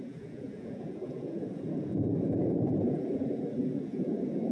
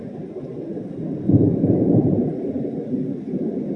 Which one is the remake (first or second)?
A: first